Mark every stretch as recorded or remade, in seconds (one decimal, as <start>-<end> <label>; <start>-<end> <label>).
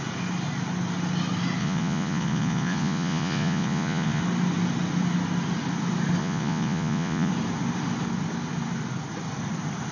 0.0-1.6 recorded; 1.6-4.2 remade; 4.2-6.2 recorded; 6.2-7.3 remade; 7.3-9.9 recorded